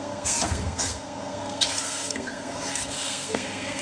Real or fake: fake